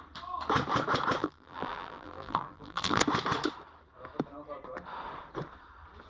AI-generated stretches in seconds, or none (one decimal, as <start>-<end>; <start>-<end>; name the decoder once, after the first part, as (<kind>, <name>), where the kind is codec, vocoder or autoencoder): 1.2-3.0 (vocoder, BigVGAN v2)